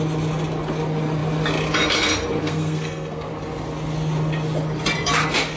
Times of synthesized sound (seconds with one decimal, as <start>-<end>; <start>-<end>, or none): 2.4-3.3